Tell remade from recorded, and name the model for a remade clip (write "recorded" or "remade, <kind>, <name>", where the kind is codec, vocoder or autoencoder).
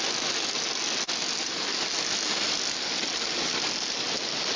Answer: recorded